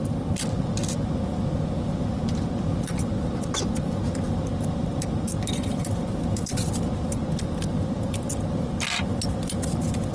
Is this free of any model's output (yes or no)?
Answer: yes